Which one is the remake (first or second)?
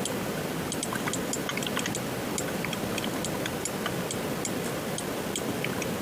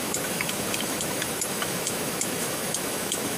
second